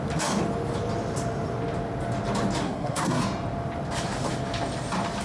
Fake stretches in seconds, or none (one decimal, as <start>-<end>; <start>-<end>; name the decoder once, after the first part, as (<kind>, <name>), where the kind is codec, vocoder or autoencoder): 2.6-3.2 (codec, SNAC)